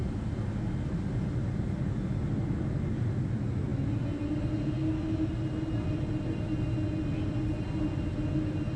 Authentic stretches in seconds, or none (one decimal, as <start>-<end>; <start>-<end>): 0.0-8.8